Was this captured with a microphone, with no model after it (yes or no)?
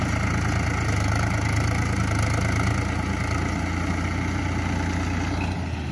yes